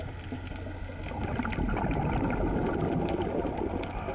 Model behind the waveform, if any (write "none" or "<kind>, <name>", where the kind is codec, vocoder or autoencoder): none